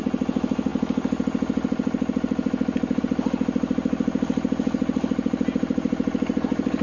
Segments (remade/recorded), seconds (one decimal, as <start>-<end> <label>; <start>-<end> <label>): 0.0-6.8 recorded